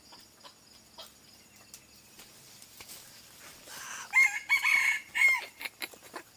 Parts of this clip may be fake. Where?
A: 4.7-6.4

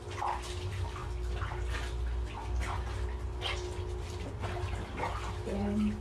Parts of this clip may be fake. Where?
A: none

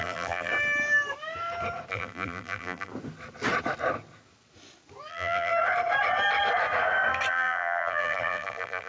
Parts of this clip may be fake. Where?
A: 0.0-0.5; 1.9-2.9; 5.1-5.5; 7.3-8.9

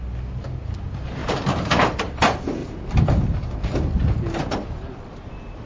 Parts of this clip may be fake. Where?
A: 1.2-2.0

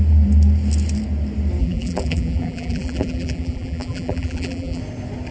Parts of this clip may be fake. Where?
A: 1.6-4.8

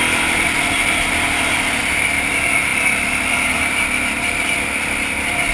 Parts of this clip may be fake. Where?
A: 0.0-5.5

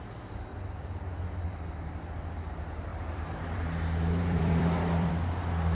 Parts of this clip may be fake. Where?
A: 2.9-5.1